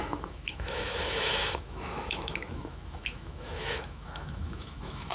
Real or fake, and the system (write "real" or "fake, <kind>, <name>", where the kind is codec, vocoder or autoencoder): fake, autoencoder, DAC-VAE